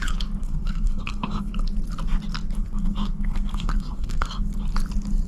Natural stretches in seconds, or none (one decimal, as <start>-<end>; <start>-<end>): 0.0-0.4; 1.5-2.6; 4.4-5.3